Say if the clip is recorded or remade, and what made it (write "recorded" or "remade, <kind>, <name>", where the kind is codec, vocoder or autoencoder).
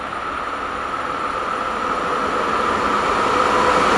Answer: recorded